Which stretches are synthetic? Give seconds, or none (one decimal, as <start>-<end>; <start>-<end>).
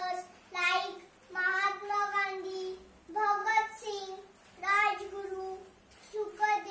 1.6-2.5; 3.4-3.9; 5.7-6.7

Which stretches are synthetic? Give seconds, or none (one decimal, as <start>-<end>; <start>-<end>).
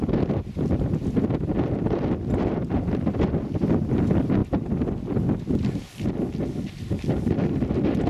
none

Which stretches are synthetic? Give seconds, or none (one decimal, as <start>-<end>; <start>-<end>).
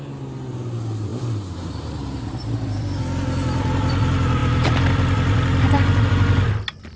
1.1-2.6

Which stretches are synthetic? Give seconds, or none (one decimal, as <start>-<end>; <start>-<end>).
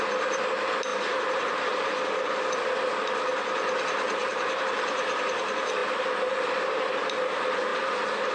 0.9-2.4; 4.2-4.8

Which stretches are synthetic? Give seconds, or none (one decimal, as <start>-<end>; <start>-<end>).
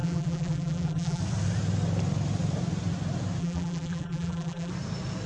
0.0-1.2; 3.4-4.7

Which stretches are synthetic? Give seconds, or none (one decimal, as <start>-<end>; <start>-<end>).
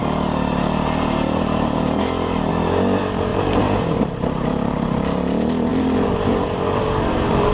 3.3-5.0; 5.7-6.3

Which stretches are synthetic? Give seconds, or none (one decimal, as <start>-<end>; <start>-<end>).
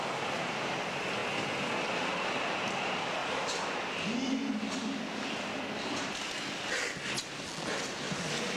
none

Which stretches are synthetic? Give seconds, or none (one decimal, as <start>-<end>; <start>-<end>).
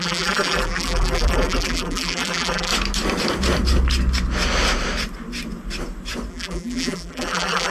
0.0-2.7; 6.3-7.7